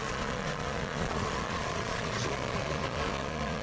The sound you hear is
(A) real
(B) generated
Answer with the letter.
B